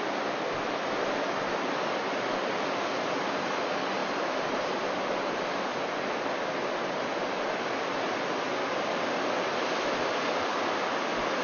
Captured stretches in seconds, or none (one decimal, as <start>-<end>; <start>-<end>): 0.0-4.0; 6.9-11.4